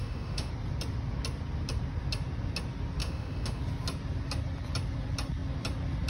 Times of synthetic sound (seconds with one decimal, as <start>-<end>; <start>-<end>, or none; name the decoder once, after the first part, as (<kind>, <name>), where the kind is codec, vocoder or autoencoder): 0.0-0.5 (autoencoder, DAC-VAE); 3.0-3.6